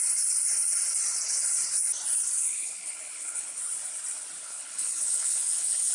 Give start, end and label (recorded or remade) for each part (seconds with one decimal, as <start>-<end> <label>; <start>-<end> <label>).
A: 0.0-2.4 recorded; 2.4-3.6 remade; 3.6-4.4 recorded; 4.4-5.9 remade